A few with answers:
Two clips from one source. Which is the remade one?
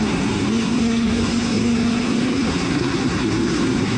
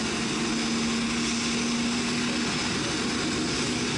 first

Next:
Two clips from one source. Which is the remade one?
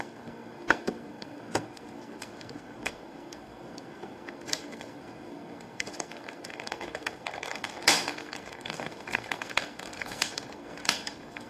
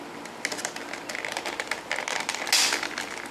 first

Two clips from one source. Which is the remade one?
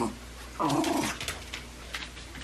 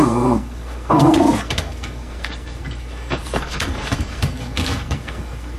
second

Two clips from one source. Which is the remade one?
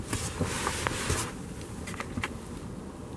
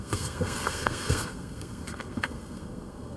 second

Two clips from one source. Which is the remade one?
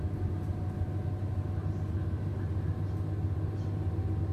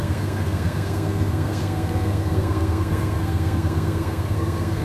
second